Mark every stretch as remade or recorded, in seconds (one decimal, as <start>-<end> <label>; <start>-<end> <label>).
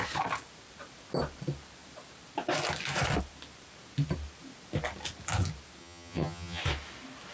0.0-5.8 recorded; 5.8-6.6 remade; 6.6-7.3 recorded